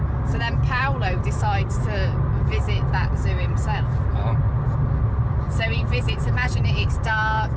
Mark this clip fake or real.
real